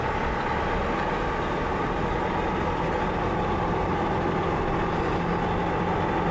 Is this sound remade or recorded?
recorded